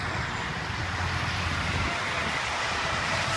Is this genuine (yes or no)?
yes